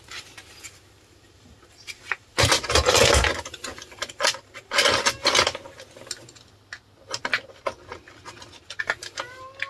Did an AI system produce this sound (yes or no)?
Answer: no